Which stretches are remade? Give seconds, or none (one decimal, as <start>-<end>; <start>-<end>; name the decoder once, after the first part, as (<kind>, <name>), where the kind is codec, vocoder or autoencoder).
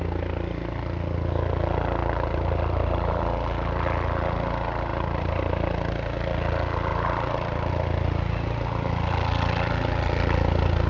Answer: 2.0-3.2 (vocoder, BigVGAN v2); 4.9-5.4; 6.9-7.7